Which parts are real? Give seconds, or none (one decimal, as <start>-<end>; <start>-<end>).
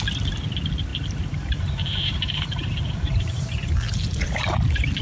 0.0-0.9; 3.7-5.0